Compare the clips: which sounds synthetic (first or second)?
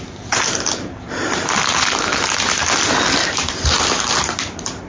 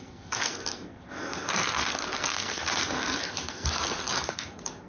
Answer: second